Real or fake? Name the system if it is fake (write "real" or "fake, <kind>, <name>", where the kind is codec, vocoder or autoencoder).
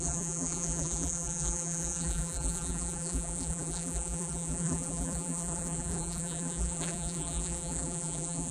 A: fake, vocoder, BigVGAN v2